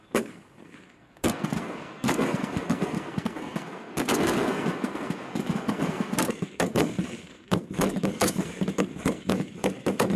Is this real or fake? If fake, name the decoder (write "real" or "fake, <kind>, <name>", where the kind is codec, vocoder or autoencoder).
fake, codec, SNAC